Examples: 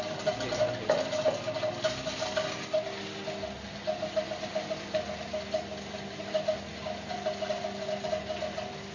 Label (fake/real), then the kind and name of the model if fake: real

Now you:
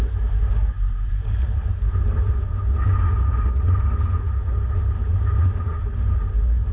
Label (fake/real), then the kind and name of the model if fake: real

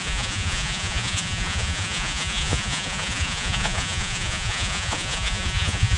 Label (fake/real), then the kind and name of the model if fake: fake, vocoder, Vocos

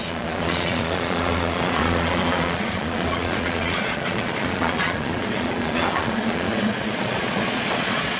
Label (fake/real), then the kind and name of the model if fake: fake, vocoder, Vocos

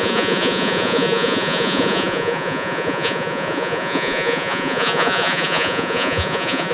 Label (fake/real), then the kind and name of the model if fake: fake, vocoder, Vocos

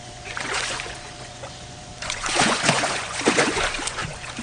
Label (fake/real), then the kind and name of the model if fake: fake, vocoder, Vocos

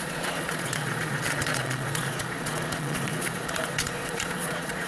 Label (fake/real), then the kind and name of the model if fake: fake, vocoder, Vocos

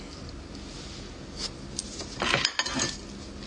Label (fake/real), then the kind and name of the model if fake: real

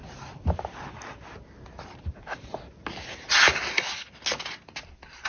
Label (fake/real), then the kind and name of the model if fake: real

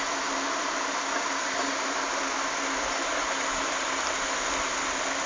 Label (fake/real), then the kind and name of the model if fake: real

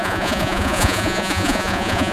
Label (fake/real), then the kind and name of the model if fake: fake, vocoder, Vocos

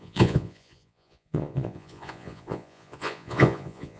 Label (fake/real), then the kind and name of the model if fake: fake, vocoder, Vocos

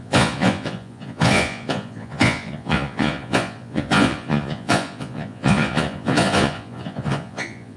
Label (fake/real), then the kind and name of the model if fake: fake, vocoder, Vocos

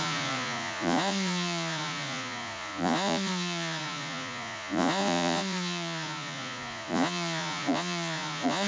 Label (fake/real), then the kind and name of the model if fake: fake, vocoder, Vocos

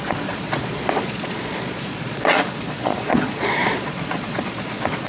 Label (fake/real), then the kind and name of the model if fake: fake, vocoder, Vocos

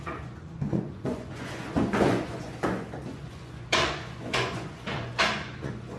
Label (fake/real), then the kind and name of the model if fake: fake, vocoder, Vocos